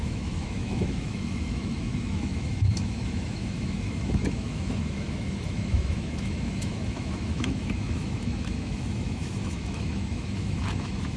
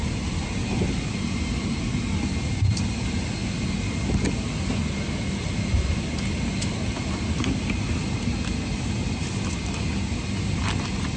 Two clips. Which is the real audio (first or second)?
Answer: second